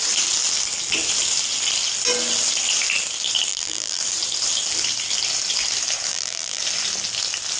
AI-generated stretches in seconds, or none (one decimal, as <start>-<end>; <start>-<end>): 3.5-4.0; 6.1-6.6